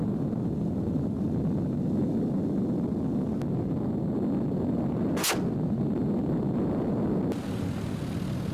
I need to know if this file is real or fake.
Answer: real